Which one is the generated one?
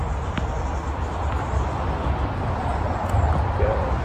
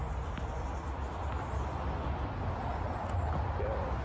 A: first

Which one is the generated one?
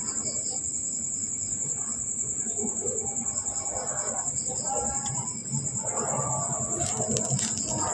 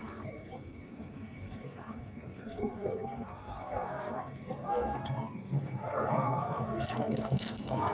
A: second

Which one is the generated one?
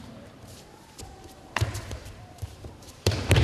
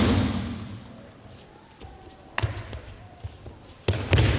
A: first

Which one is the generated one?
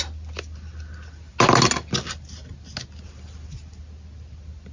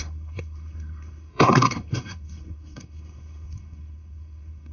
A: second